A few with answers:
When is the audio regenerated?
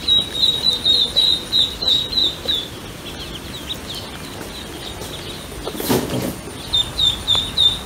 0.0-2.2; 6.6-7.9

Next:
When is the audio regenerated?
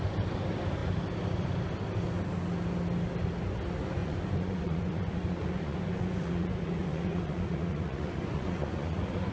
4.0-9.3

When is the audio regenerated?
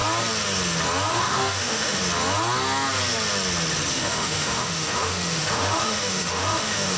1.1-2.0; 3.9-7.0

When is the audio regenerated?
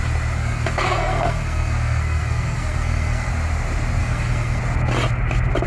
0.4-3.3; 4.0-4.6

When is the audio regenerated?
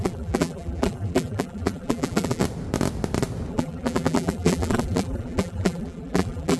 0.0-2.4; 3.5-6.6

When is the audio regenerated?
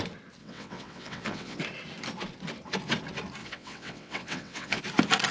0.4-1.6; 3.4-4.8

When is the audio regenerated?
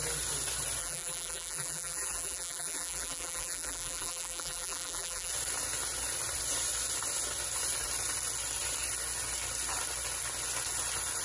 0.8-5.3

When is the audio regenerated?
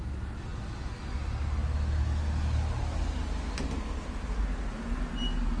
none